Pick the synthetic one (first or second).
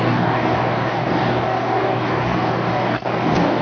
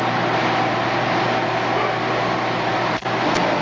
first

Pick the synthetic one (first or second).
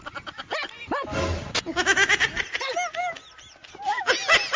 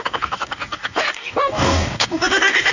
second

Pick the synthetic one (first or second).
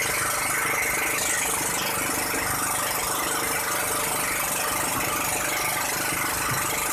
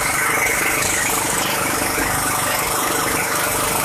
second